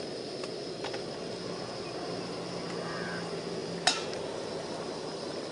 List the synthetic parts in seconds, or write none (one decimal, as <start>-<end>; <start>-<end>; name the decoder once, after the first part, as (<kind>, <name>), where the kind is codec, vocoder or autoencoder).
none